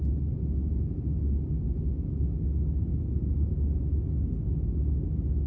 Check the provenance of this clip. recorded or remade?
recorded